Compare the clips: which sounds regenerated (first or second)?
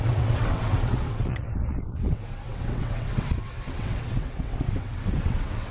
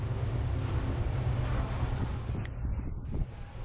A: first